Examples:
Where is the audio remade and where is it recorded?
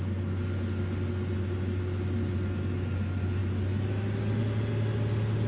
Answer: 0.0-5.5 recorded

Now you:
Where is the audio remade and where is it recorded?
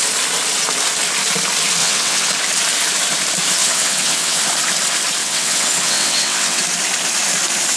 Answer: 0.0-1.8 recorded; 1.8-2.3 remade; 2.3-3.6 recorded; 3.6-4.4 remade; 4.4-5.2 recorded; 5.2-6.6 remade; 6.6-7.8 recorded